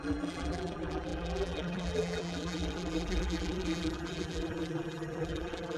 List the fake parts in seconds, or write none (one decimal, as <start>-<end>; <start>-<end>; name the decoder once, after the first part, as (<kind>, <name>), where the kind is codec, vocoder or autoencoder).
0.0-5.8 (vocoder, BigVGAN v2)